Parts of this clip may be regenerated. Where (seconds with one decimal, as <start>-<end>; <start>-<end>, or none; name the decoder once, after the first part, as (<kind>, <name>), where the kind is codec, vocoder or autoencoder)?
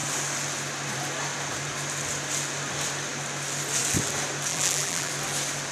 4.5-5.1 (vocoder, BigVGAN v2)